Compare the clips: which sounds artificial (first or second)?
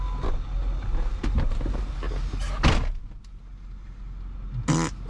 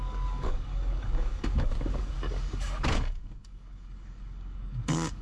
second